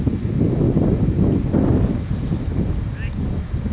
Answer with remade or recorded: recorded